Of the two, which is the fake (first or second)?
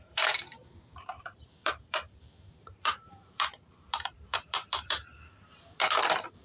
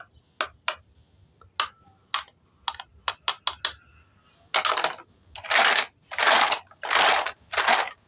first